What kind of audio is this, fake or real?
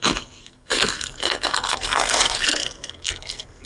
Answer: fake